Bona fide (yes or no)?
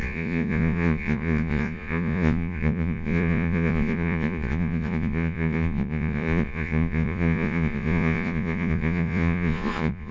no